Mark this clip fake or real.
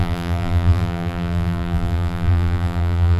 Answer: fake